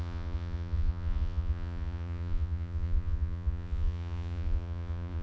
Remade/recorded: remade